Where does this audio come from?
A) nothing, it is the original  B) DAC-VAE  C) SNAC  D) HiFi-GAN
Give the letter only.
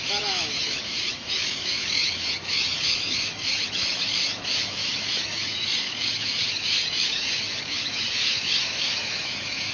B